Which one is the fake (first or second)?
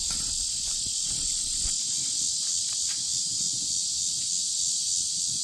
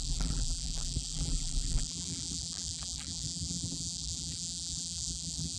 second